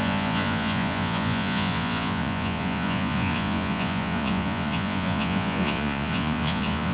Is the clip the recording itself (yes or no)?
no